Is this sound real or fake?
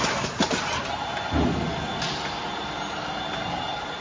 real